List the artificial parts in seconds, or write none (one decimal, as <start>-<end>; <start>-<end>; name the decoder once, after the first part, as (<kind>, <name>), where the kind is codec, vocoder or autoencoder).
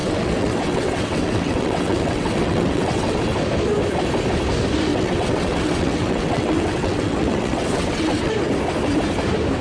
0.0-3.2 (vocoder, WaveNeXt); 4.9-8.3